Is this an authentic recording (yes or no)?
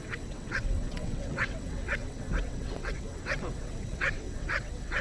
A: no